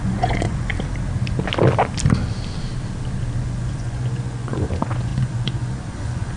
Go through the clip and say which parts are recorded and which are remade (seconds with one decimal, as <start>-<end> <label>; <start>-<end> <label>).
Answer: 0.0-0.7 remade; 0.7-3.4 recorded; 3.4-6.4 remade